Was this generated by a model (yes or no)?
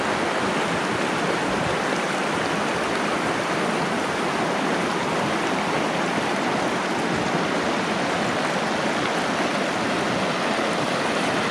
no